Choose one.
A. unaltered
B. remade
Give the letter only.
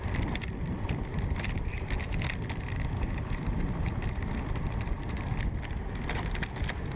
A